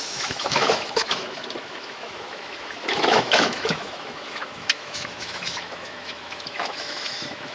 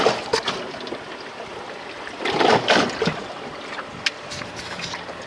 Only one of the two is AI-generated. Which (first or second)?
first